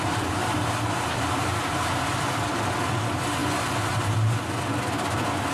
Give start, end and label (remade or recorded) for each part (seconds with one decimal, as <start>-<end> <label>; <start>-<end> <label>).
0.0-0.4 recorded; 0.4-2.7 remade; 2.7-5.5 recorded